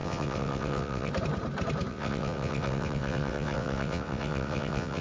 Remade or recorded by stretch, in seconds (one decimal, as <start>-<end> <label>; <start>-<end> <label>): 0.0-1.1 remade; 1.1-1.9 recorded; 1.9-5.0 remade